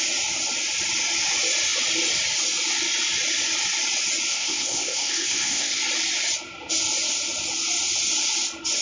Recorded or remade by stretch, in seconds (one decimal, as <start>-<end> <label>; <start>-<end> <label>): 0.0-4.3 recorded; 4.3-5.8 remade; 5.8-8.8 recorded